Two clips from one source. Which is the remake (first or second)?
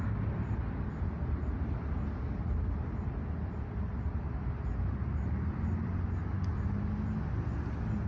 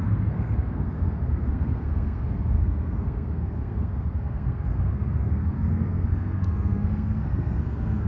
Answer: second